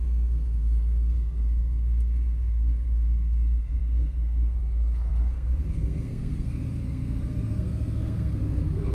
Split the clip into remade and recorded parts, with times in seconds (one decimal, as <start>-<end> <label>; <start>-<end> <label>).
0.0-8.9 remade